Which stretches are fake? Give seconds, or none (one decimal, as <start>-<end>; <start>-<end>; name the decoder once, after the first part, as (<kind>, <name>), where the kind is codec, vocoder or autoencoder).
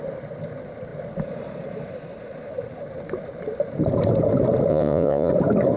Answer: 4.7-5.3 (vocoder, Vocos)